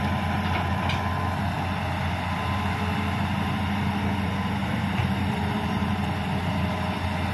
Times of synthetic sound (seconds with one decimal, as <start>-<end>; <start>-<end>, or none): 4.6-6.5